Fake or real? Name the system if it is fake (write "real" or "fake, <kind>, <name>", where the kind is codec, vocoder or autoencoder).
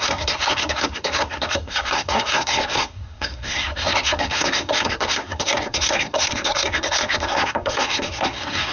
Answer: fake, codec, SNAC